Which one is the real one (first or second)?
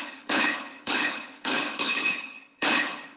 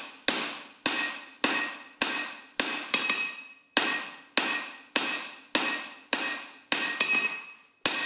second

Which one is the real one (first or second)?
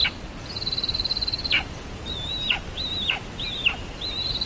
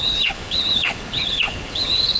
first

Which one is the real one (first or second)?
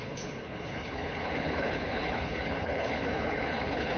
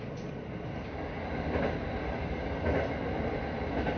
second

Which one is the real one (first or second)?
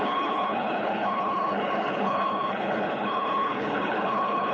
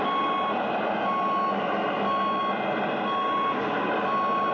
second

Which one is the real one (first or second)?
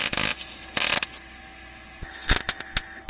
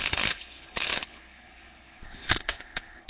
first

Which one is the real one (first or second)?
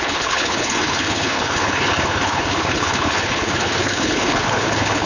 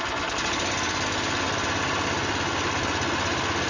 second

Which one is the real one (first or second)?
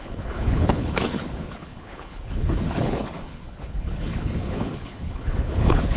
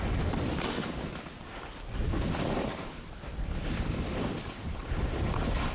second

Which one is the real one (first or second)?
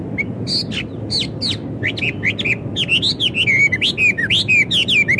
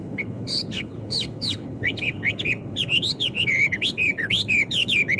first